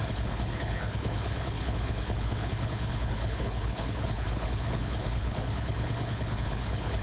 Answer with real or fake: fake